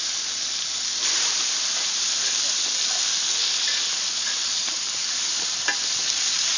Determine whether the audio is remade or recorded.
recorded